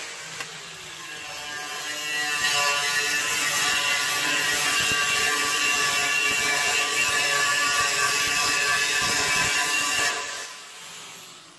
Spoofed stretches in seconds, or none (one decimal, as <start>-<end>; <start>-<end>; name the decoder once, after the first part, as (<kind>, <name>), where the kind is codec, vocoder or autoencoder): 0.0-1.4 (vocoder, Vocos); 3.2-11.6